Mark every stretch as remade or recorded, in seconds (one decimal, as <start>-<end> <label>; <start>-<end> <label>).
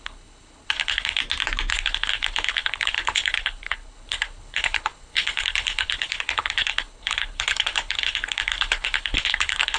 0.0-1.2 remade; 1.2-1.7 recorded; 1.7-9.8 remade